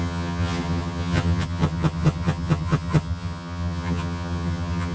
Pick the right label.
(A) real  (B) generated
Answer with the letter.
B